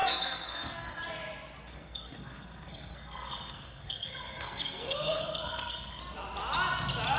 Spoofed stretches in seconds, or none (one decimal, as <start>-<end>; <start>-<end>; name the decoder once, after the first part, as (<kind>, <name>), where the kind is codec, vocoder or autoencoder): 0.0-0.9 (codec, SNAC); 1.7-6.0